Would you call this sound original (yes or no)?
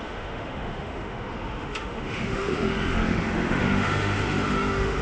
no